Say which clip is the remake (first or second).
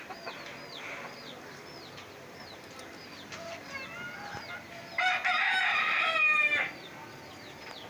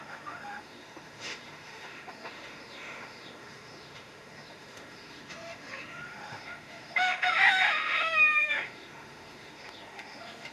second